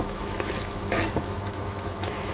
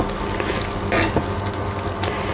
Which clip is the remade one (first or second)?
first